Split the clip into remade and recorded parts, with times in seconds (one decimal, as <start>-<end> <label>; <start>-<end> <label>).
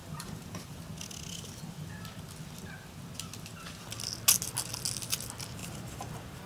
0.0-0.8 remade; 0.8-5.6 recorded; 5.6-6.5 remade